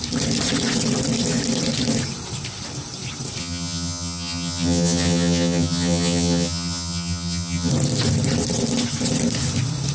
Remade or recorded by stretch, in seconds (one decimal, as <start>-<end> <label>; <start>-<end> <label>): 0.0-3.4 recorded; 3.4-7.7 remade; 7.7-9.9 recorded